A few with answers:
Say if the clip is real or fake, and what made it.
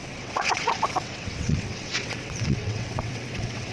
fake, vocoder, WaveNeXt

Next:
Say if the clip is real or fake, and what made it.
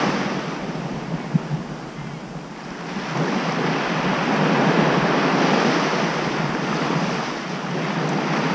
real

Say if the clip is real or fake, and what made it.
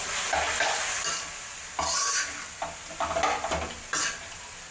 real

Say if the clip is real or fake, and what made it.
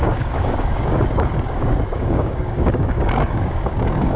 fake, codec, DAC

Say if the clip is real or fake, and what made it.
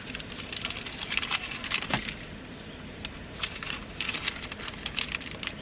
fake, vocoder, BigVGAN v2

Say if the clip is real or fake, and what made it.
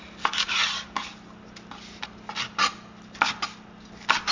real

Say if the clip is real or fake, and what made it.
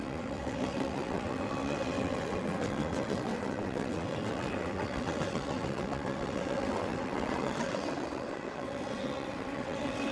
fake, vocoder, WaveNeXt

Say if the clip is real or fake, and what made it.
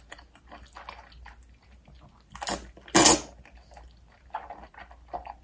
real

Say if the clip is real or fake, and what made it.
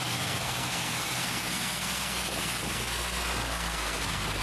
fake, codec, SNAC